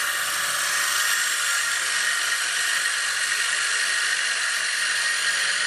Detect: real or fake real